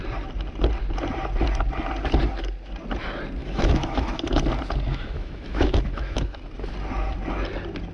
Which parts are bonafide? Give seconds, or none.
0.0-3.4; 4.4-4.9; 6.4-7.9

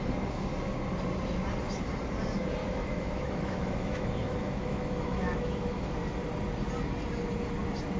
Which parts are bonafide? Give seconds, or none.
0.0-2.6; 6.0-8.0